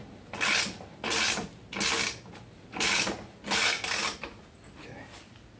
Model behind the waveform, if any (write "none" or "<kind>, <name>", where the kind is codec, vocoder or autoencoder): none